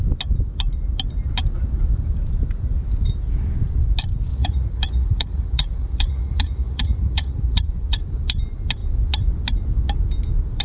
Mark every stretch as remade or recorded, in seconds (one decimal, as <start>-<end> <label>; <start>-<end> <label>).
0.0-4.3 recorded; 4.3-8.0 remade; 8.0-10.6 recorded